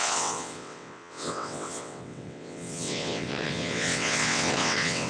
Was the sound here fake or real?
fake